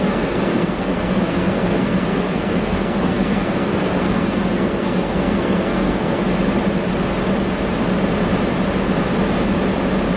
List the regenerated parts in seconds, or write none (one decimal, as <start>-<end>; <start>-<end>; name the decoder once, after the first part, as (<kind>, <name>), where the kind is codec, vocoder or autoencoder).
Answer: 0.0-6.2 (codec, SNAC)